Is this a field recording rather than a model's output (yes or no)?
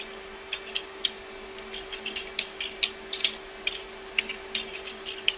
yes